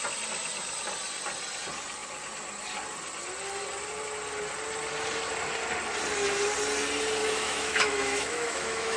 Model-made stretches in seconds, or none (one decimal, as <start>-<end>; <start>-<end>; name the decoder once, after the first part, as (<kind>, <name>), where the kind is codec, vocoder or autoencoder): 7.2-9.0 (autoencoder, DAC-VAE)